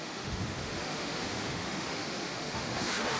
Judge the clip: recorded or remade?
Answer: remade